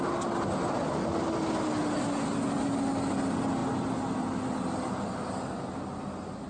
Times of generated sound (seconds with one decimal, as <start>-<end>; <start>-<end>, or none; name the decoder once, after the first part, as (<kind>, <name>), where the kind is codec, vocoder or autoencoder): none